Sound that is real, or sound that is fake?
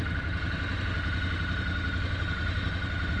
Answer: real